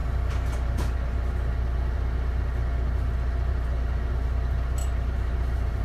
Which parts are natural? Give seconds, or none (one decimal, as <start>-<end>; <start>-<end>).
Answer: 0.0-4.8